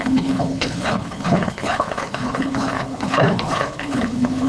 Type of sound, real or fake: fake